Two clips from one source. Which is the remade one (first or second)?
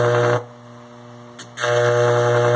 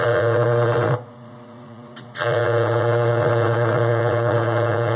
second